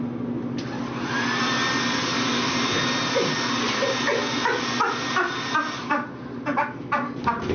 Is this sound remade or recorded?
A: recorded